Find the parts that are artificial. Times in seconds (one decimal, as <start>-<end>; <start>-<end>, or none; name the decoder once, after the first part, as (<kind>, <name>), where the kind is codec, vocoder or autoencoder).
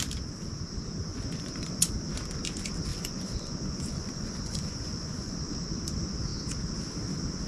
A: 1.1-1.9 (vocoder, Vocos); 2.9-5.4